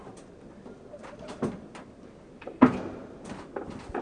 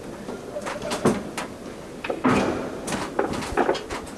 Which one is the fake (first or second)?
first